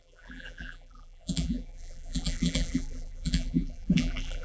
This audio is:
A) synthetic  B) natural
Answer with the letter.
A